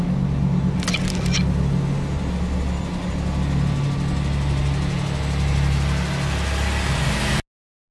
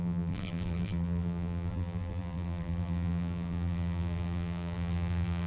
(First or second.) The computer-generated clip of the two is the second